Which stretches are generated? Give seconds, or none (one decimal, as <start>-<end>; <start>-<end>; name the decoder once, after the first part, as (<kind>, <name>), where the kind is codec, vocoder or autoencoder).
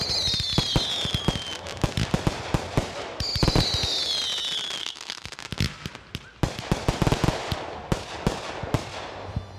4.8-5.4 (codec, SNAC)